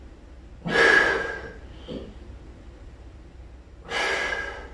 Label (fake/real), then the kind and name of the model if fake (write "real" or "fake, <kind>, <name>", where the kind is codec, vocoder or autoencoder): real